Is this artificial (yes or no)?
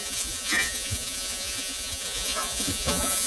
yes